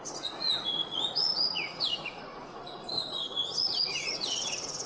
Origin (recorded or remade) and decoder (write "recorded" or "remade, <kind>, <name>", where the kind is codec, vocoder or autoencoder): remade, vocoder, Vocos